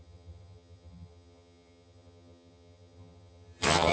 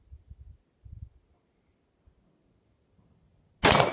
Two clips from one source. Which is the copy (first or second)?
first